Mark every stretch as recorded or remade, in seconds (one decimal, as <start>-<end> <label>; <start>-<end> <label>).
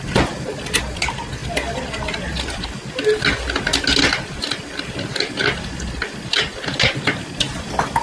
0.0-8.0 recorded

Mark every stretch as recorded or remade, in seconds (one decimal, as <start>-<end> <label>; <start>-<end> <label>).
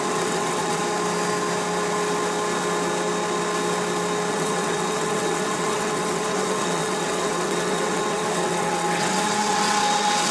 0.0-0.8 remade; 0.8-4.3 recorded; 4.3-10.3 remade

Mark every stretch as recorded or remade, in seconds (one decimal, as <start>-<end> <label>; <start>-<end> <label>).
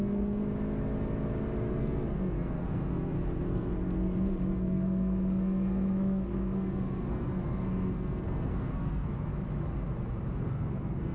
0.0-0.4 remade; 0.4-1.8 recorded; 1.8-9.3 remade; 9.3-10.4 recorded; 10.4-11.1 remade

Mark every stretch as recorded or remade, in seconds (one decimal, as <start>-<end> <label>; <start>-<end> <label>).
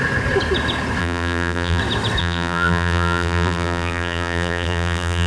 0.0-1.0 recorded; 1.0-1.8 remade; 1.8-2.2 recorded; 2.2-5.3 remade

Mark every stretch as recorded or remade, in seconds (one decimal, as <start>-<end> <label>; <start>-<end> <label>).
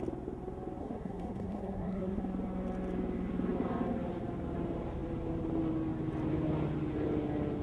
0.0-0.8 recorded; 0.8-2.2 remade; 2.2-7.6 recorded